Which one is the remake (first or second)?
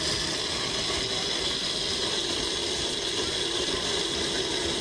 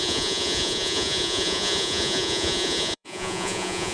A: second